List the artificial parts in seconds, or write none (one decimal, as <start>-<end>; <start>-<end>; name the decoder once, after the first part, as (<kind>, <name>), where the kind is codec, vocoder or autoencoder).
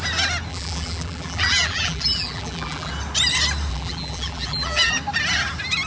0.5-2.9 (vocoder, BigVGAN v2); 3.7-4.9